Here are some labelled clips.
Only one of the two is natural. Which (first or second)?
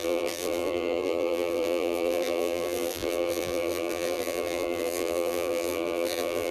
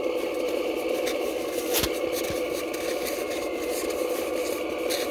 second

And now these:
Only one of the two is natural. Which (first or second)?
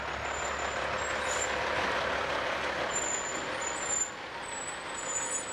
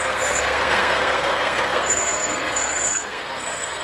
first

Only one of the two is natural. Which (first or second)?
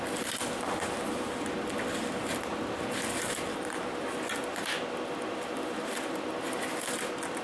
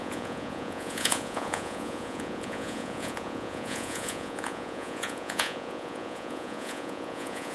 first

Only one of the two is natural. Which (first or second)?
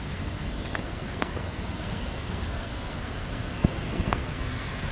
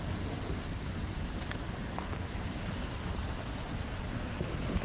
second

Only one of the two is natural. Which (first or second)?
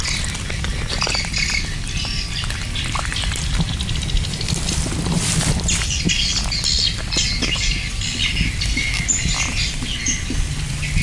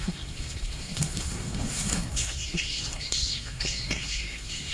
first